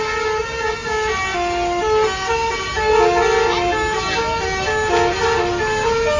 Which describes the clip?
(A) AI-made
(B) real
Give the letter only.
B